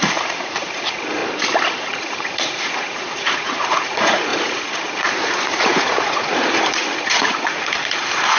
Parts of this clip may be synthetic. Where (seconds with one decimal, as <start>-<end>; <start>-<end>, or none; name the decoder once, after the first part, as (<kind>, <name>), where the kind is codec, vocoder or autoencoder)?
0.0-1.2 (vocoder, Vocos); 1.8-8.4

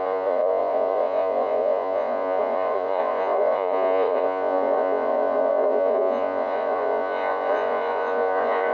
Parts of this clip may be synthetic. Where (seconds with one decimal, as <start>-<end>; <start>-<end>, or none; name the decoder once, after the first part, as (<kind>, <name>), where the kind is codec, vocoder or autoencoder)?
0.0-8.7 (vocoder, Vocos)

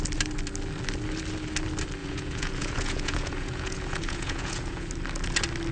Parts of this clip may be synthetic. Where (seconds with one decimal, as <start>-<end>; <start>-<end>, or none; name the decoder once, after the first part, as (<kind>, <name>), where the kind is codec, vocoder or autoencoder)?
2.0-4.9 (vocoder, Vocos)

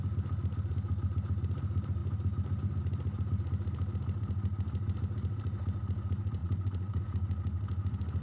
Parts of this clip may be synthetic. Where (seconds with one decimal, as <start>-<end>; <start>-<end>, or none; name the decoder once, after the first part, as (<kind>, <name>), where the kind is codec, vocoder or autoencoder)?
6.4-7.0 (vocoder, Vocos)

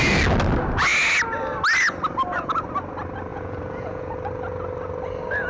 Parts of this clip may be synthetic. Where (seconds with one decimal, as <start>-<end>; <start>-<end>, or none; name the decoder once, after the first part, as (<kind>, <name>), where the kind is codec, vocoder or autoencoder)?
3.3-4.1 (vocoder, Vocos)

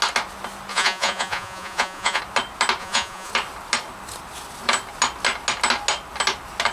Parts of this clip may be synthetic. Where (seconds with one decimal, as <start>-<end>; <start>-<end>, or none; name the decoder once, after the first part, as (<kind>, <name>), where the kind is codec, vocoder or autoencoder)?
0.7-2.2 (vocoder, Vocos); 2.8-3.3